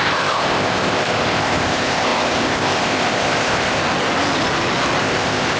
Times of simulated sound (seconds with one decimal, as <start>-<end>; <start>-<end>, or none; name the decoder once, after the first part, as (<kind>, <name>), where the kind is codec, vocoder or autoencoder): 0.0-3.8 (codec, ZipCodec); 5.0-5.6